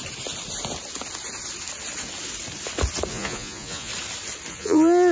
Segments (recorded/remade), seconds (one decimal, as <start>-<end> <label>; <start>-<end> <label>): 0.0-3.1 recorded; 3.1-3.9 remade; 3.9-4.5 recorded; 4.5-5.1 remade